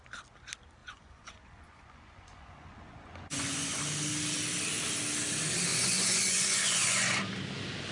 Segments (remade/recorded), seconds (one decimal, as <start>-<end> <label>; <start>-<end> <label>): 0.0-0.8 recorded; 0.8-3.8 remade; 3.8-5.7 recorded; 5.7-7.2 remade; 7.2-7.9 recorded